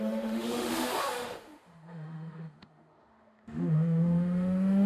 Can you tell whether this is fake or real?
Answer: fake